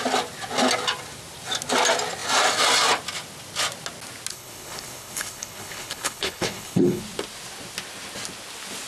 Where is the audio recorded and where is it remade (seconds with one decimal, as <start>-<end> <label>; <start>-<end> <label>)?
0.0-4.3 recorded; 4.3-7.0 remade; 7.0-8.9 recorded